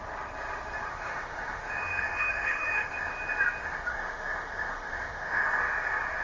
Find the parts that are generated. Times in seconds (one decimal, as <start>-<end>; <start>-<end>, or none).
0.9-3.1; 3.6-5.6